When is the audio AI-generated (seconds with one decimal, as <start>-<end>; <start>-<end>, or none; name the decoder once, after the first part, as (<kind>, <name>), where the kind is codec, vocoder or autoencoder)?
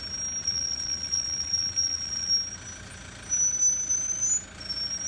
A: 0.4-2.3 (vocoder, Vocos)